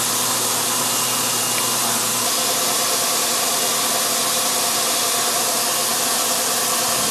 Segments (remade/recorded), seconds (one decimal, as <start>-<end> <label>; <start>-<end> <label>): 0.0-7.1 recorded